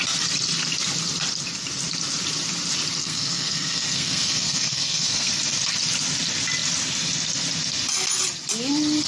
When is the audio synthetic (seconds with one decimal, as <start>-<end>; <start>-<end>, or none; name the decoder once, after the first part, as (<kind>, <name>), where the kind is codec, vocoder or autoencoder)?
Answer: 3.0-5.3 (codec, SNAC)